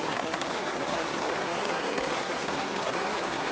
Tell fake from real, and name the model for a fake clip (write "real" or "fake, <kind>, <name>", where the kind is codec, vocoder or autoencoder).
fake, codec, SNAC